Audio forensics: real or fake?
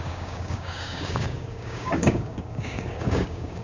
fake